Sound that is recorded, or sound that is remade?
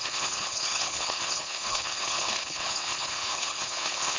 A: remade